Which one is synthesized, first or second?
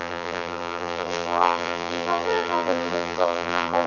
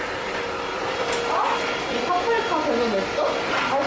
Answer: first